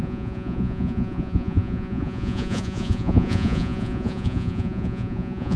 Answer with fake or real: fake